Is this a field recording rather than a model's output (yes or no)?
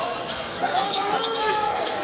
no